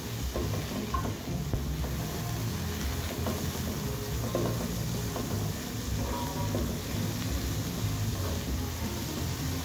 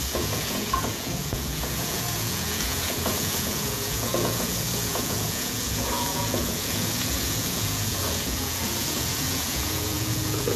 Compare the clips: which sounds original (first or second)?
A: first